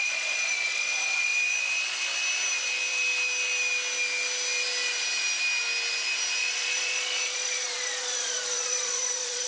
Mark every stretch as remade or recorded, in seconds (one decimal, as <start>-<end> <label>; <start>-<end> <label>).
0.0-1.3 remade; 1.3-6.4 recorded; 6.4-9.5 remade